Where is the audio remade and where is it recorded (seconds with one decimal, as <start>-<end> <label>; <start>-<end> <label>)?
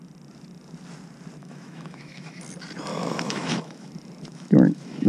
0.0-1.4 recorded; 1.4-2.4 remade; 2.4-2.9 recorded; 2.9-3.9 remade; 3.9-4.3 recorded; 4.3-5.1 remade